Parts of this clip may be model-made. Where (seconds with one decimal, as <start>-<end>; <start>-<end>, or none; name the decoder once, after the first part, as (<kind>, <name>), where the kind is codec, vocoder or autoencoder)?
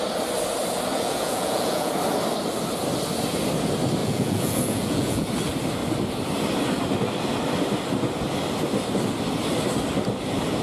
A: 0.9-1.9 (vocoder, Vocos); 4.0-5.3